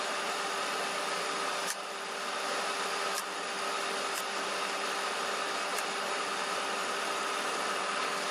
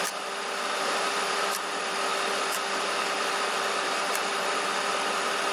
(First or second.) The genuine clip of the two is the first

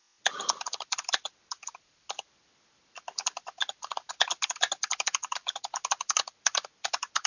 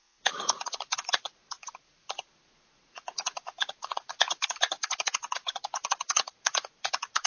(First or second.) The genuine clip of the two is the first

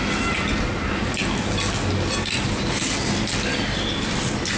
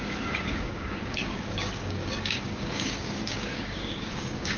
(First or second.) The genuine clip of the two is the first